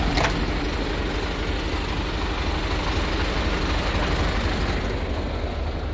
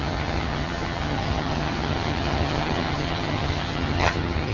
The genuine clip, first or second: first